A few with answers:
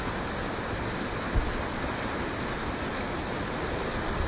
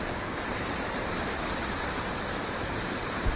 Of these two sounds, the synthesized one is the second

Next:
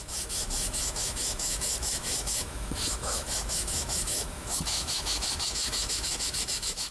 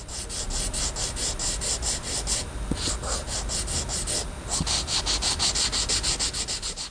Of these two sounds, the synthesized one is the first